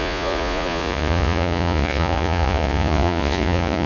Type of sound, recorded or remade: remade